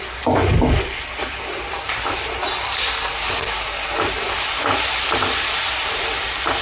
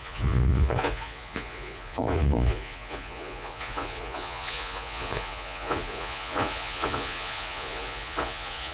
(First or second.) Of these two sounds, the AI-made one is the second